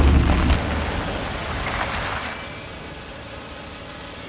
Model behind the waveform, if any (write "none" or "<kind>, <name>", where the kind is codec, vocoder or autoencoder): none